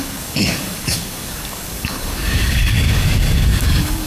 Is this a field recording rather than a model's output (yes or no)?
no